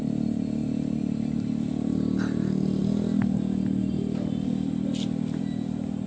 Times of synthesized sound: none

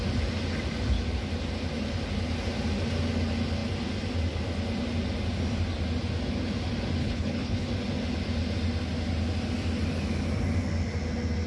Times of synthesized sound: 7.0-7.7 (codec, HILCodec)